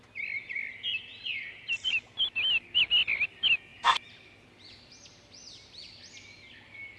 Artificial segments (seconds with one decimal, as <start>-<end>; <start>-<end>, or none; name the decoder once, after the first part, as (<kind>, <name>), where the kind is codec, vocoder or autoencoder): 1.1-1.9 (vocoder, BigVGAN v2); 3.7-4.4